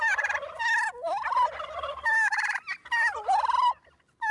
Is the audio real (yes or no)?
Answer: yes